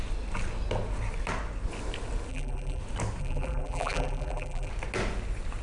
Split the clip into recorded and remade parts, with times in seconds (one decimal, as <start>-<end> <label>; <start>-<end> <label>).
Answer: 0.0-2.3 recorded; 2.3-2.8 remade; 2.8-3.2 recorded; 3.2-4.7 remade; 4.7-5.6 recorded